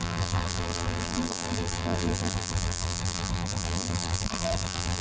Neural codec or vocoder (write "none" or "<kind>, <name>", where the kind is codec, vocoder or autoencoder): vocoder, BigVGAN v2